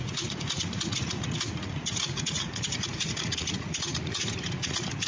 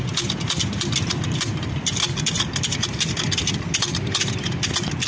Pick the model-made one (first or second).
first